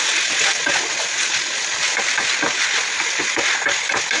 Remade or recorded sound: recorded